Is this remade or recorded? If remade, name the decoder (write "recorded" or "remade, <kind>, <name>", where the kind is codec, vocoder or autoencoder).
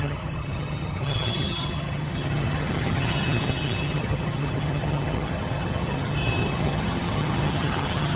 remade, vocoder, HiFi-GAN